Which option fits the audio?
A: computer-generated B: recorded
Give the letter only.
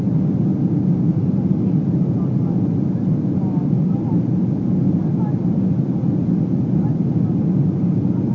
B